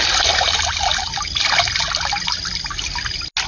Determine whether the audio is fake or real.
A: real